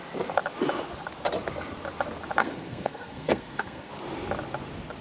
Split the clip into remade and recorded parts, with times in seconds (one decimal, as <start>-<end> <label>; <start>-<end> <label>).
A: 0.0-2.4 recorded; 2.4-3.9 remade; 3.9-5.0 recorded